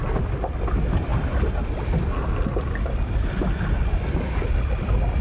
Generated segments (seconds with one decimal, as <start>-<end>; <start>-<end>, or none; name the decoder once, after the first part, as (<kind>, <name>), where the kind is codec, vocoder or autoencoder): none